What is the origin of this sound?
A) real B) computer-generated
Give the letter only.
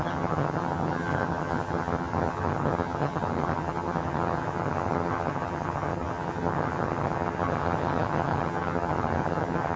B